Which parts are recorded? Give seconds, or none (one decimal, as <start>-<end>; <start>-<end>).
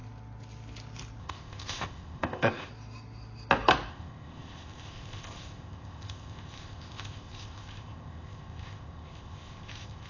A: 0.0-1.2; 2.7-3.9